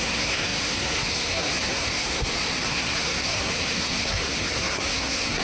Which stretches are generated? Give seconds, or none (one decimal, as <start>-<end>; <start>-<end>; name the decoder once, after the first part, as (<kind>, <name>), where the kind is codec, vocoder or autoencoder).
0.0-5.4 (codec, SNAC)